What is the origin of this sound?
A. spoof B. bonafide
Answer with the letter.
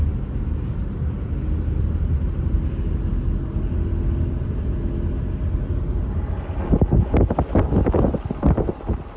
B